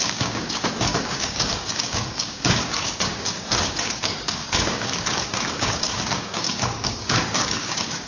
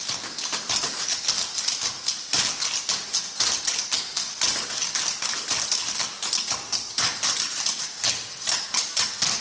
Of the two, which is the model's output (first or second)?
first